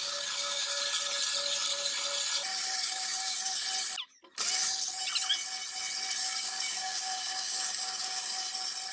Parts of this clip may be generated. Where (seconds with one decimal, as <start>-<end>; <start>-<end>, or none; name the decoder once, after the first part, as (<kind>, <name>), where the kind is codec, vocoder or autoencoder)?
0.0-0.8 (codec, DAC); 2.5-3.5; 6.2-8.5